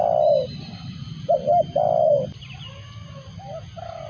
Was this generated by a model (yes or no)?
no